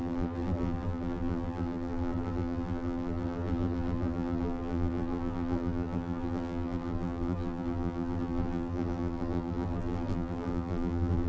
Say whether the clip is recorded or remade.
remade